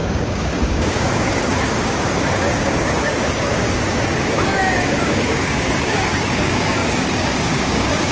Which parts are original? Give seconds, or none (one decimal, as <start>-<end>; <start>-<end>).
none